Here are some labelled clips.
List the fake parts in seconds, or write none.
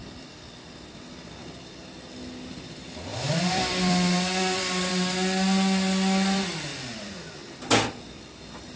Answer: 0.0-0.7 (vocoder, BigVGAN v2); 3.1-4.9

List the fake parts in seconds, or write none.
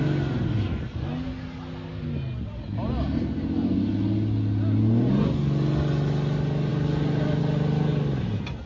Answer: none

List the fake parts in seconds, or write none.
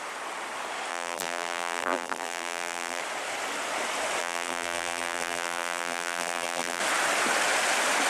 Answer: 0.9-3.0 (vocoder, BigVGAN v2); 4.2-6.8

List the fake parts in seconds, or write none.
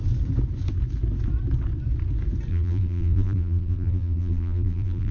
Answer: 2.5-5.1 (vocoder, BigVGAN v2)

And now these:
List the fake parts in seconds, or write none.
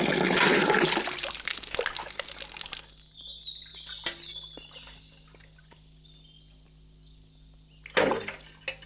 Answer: none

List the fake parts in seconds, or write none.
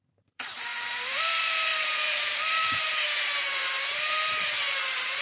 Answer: 0.0-5.2 (vocoder, BigVGAN v2)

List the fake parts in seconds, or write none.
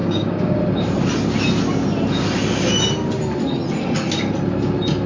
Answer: 0.0-0.6 (codec, DAC)